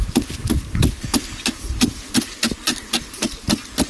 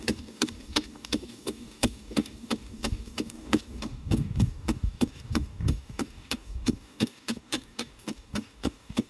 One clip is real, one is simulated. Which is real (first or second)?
first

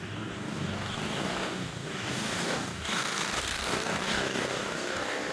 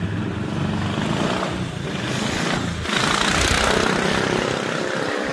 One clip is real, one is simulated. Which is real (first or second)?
second